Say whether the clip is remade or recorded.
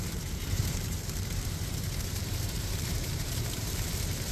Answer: remade